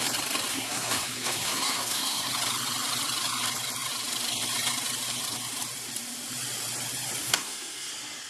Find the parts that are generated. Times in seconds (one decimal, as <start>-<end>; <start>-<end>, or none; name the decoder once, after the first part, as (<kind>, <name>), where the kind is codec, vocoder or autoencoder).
0.5-2.3 (codec, SNAC); 7.2-7.9